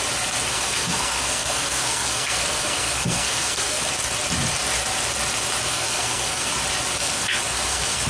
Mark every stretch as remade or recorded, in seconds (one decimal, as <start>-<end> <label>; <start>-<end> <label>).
0.0-0.5 recorded; 0.5-3.9 remade; 3.9-5.7 recorded; 5.7-6.5 remade; 6.5-7.0 recorded; 7.0-8.1 remade